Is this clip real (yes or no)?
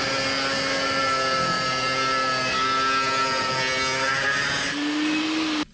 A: yes